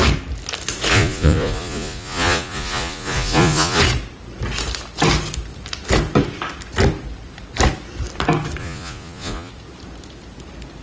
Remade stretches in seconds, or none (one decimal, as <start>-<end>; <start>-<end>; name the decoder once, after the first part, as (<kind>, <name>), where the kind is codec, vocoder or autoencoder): 0.9-3.8 (vocoder, Vocos); 8.6-9.5